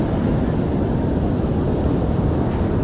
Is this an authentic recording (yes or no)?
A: yes